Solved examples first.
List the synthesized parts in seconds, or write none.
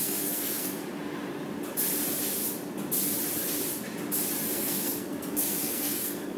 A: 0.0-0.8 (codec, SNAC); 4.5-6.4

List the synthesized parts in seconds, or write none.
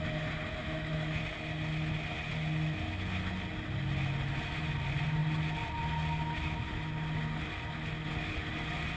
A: 0.6-1.2 (autoencoder, DAC-VAE)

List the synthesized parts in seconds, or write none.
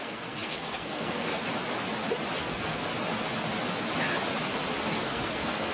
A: 0.0-1.3 (codec, SNAC); 2.4-2.9; 4.9-5.7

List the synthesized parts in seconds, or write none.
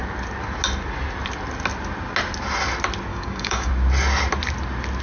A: 3.1-3.7 (codec, DAC)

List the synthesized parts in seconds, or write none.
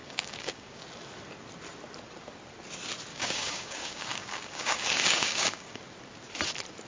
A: 0.0-0.8 (codec, DAC); 3.1-5.8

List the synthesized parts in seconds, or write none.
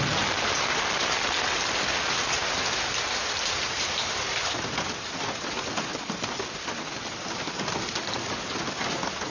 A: 1.0-4.7 (vocoder, BigVGAN v2)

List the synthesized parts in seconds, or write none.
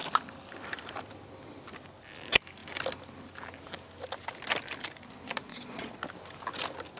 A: 5.5-6.0 (vocoder, Vocos)